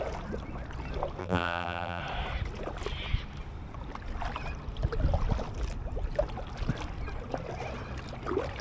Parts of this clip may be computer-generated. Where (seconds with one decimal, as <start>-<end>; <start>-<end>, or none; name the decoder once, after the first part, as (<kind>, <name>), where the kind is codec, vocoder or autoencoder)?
1.2-2.0 (vocoder, BigVGAN v2)